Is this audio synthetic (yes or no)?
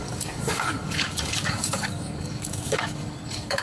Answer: yes